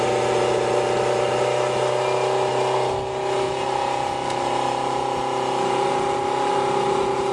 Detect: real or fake real